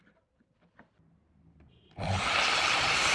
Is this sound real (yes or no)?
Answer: yes